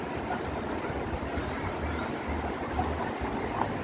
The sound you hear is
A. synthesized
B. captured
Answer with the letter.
A